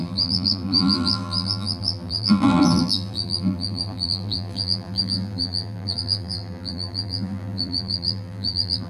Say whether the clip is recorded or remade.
remade